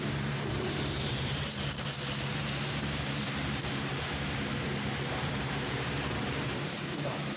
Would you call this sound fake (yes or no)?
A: yes